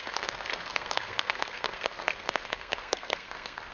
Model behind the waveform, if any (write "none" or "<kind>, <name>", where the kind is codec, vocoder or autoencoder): codec, SNAC